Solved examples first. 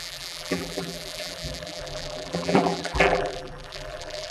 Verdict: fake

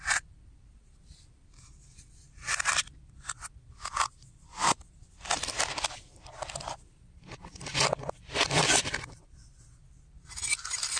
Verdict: fake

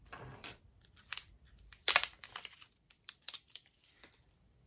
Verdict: fake